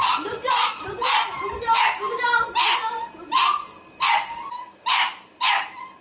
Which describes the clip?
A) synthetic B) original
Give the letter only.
A